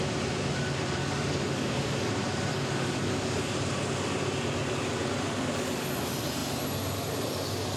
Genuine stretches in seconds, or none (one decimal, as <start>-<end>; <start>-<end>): 0.0-1.0; 2.1-2.5; 3.5-7.8